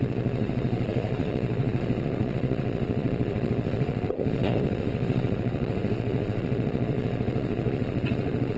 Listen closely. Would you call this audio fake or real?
fake